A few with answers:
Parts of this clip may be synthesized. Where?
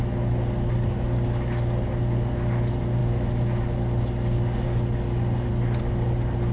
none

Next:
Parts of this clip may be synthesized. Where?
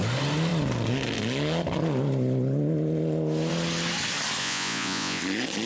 4.4-5.2